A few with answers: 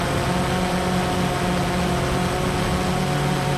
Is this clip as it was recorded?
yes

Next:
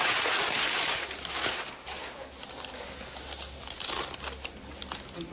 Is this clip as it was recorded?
yes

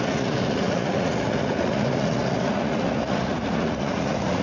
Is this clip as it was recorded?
no